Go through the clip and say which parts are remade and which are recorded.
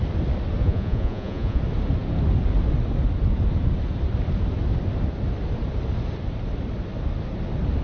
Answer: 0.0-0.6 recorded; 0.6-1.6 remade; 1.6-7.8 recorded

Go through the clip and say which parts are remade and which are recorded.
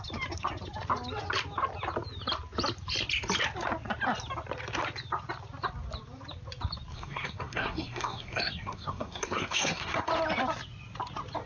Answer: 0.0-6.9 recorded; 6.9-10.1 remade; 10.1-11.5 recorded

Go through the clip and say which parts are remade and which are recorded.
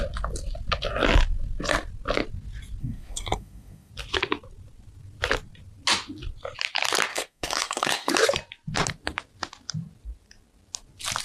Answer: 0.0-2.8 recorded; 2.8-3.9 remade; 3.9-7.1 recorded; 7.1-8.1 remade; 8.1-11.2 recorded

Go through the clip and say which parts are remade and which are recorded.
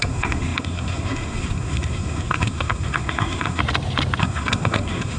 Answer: 0.0-3.6 remade; 3.6-4.2 recorded; 4.2-5.2 remade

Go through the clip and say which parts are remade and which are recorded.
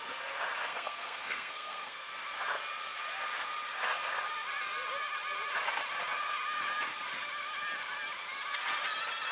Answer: 0.0-0.7 recorded; 0.7-2.1 remade; 2.1-9.3 recorded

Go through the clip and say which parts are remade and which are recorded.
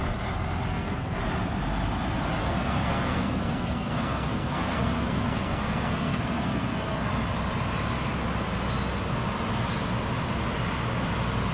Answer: 0.0-0.7 recorded; 0.7-1.2 remade; 1.2-2.4 recorded; 2.4-7.1 remade; 7.1-11.5 recorded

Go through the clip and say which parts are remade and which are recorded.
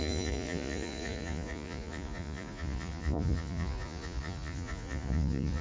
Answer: 0.0-5.6 remade